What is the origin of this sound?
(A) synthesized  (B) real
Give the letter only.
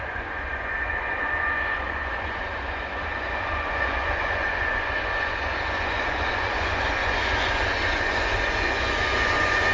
A